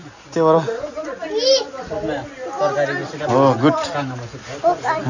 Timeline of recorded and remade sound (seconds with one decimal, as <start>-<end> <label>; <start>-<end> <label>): 0.0-5.1 recorded